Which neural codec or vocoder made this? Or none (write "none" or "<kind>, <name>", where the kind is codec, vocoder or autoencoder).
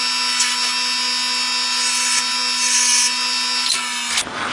none